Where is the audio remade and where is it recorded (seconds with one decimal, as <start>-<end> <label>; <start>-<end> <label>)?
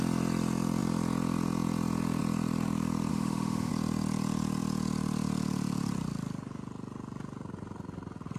0.0-3.1 recorded; 3.1-3.7 remade; 3.7-8.4 recorded